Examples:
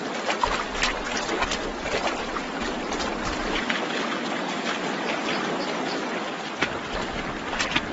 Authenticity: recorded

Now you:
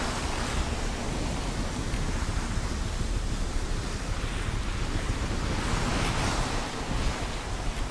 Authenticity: recorded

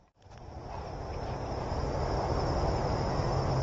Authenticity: remade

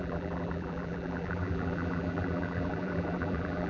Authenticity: remade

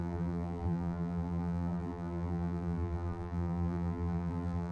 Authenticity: remade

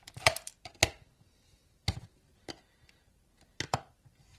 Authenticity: remade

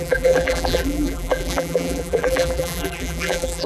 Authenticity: remade